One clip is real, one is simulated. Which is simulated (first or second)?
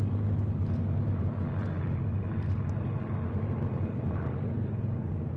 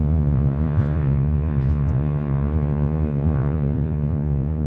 second